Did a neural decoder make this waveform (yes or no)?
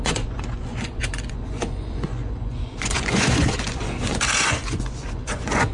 yes